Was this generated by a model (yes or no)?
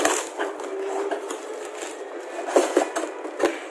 no